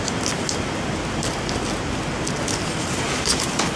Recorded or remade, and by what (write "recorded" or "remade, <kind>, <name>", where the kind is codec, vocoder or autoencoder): recorded